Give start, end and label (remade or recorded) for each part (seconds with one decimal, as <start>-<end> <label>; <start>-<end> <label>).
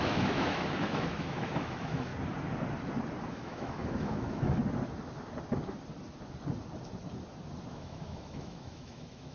0.0-2.1 remade; 2.1-3.3 recorded; 3.3-4.6 remade; 4.6-7.7 recorded; 7.7-9.3 remade